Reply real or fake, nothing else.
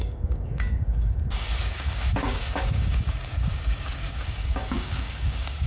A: fake